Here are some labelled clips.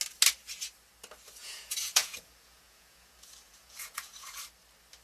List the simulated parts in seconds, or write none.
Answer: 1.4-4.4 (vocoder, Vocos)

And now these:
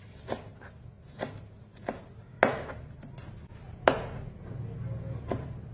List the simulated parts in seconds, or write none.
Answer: none

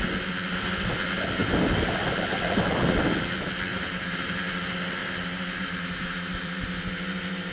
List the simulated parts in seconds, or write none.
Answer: 3.7-4.5 (vocoder, BigVGAN v2); 5.0-6.8

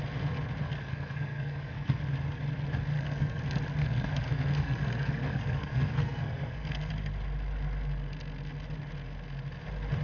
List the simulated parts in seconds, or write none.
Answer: 0.6-2.0 (codec, SNAC); 2.9-3.4; 3.8-6.9

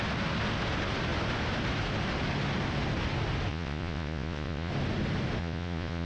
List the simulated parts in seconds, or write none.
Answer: 3.5-4.7 (vocoder, Vocos); 5.4-6.1